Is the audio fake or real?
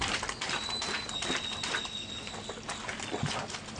real